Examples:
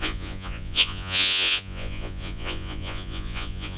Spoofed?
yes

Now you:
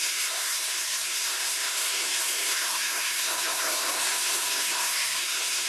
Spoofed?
yes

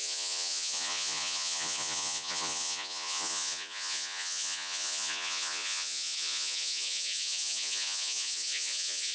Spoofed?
yes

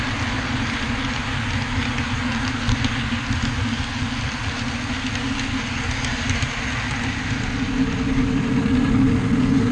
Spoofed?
no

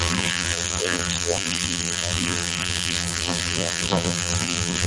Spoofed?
yes